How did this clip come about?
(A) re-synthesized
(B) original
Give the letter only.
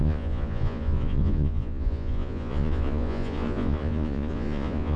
A